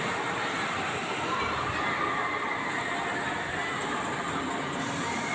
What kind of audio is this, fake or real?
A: real